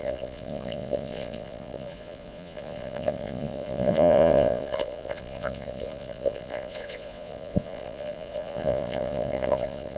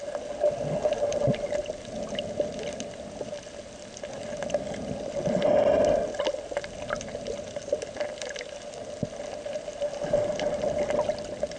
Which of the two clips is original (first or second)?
second